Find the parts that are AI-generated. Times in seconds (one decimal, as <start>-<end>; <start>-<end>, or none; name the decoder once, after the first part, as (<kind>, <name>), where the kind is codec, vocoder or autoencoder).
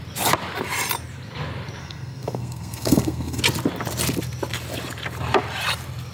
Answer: 1.8-3.4 (codec, SNAC)